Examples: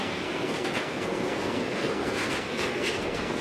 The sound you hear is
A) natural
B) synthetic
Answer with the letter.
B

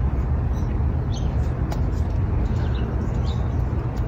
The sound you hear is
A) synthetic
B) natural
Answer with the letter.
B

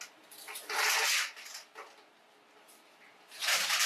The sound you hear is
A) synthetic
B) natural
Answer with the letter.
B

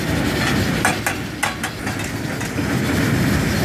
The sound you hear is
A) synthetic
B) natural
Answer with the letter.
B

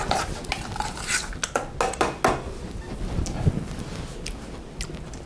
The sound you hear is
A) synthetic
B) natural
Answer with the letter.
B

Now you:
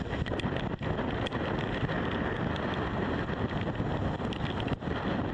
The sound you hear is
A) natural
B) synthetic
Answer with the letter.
A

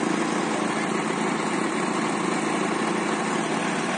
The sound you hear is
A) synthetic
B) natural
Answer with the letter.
B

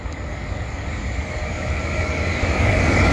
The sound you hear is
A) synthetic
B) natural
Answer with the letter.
A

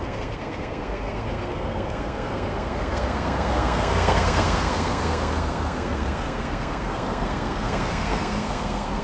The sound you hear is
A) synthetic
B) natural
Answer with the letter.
A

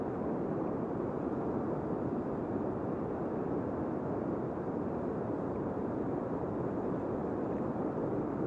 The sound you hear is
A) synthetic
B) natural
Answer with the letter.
B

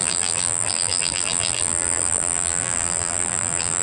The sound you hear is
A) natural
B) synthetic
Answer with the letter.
B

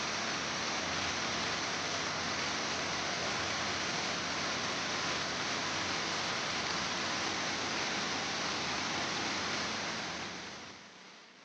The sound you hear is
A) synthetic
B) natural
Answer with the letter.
A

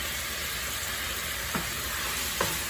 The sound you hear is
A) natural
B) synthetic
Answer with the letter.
A